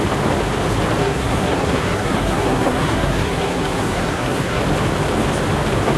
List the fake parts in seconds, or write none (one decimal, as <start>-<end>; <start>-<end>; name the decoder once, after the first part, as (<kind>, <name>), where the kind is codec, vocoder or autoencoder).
1.0-4.6 (codec, SNAC)

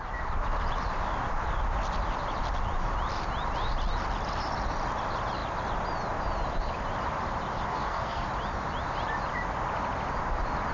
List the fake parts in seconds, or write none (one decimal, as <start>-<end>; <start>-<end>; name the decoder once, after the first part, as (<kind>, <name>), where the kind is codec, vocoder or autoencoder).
7.7-8.3 (codec, SNAC)

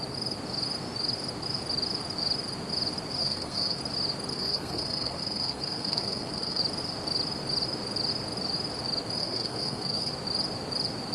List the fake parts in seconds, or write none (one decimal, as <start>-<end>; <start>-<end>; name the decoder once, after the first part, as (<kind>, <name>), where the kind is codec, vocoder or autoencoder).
3.2-3.8 (codec, SNAC); 4.3-6.6; 9.2-10.1

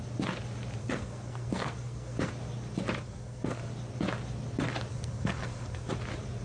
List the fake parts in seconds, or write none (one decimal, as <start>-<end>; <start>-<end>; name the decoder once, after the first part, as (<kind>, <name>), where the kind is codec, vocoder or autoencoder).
0.8-2.3 (codec, SNAC); 3.0-3.6; 4.9-5.9

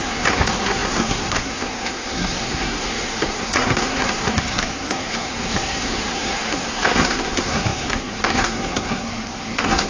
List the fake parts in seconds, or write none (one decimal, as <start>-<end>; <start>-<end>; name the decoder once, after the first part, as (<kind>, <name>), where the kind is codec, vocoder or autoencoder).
0.0-9.9 (codec, SNAC)

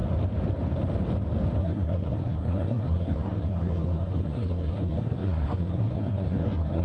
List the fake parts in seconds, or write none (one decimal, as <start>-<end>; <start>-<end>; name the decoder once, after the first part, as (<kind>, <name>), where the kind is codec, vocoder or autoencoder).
1.6-6.8 (codec, SNAC)

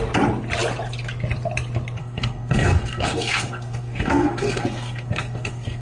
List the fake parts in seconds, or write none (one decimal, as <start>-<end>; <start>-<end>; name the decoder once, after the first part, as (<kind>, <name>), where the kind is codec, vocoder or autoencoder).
2.0-5.8 (codec, SNAC)